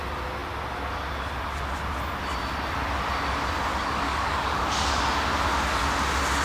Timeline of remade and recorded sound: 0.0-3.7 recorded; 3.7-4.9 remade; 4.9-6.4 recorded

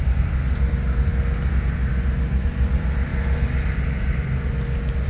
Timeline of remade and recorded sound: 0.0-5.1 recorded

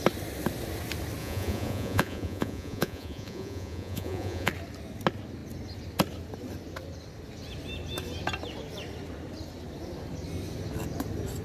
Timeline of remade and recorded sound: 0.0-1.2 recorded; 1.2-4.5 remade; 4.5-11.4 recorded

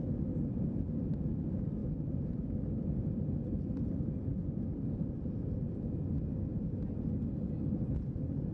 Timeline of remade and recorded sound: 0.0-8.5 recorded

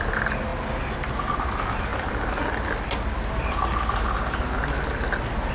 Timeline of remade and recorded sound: 0.0-5.5 recorded